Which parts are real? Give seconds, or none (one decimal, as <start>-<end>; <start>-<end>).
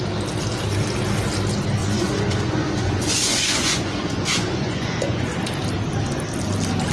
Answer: 0.0-1.8; 5.3-6.9